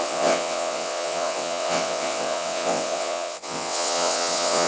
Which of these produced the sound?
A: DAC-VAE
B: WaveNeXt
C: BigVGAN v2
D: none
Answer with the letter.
B